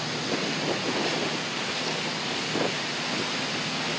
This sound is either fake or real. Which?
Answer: real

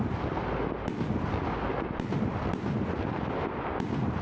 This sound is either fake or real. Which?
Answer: real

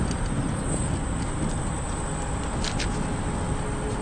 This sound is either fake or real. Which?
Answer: real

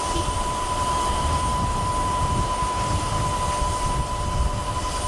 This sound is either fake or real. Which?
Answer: real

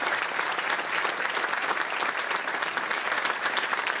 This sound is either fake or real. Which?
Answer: fake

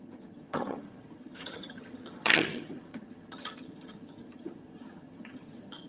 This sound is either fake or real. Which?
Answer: fake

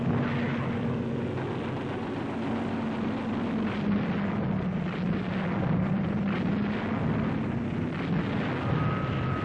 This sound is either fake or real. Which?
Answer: real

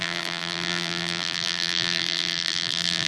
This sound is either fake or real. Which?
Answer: fake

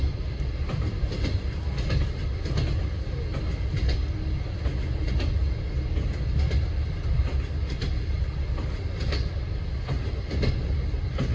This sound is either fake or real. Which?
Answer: real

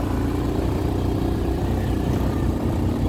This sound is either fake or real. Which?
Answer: fake